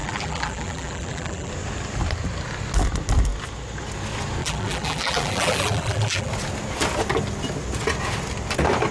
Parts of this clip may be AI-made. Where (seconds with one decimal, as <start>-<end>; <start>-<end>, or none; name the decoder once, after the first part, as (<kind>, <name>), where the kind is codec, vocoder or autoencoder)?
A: 0.0-1.5 (vocoder, BigVGAN v2); 4.4-6.3